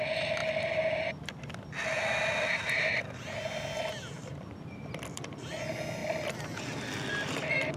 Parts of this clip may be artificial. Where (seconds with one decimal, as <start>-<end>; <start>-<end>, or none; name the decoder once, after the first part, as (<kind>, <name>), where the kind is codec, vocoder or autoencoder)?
4.2-5.5 (vocoder, BigVGAN v2); 6.0-6.8